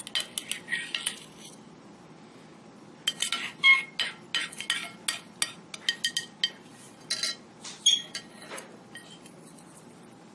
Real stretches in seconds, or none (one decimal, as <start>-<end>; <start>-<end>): 0.0-10.3